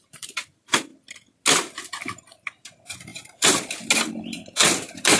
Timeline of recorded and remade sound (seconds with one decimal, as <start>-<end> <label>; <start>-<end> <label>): 0.0-0.9 remade; 0.9-2.0 recorded; 2.0-5.2 remade